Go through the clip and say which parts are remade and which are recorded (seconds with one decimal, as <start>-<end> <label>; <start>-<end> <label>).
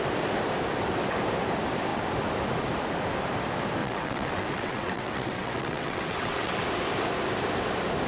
0.0-3.8 recorded; 3.8-6.6 remade; 6.6-8.1 recorded